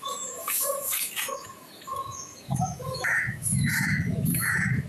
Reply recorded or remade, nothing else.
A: remade